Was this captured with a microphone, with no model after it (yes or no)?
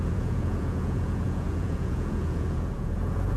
no